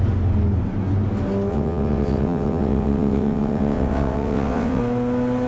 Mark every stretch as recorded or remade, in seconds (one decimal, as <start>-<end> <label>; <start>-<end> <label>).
0.0-1.5 recorded; 1.5-4.8 remade; 4.8-5.5 recorded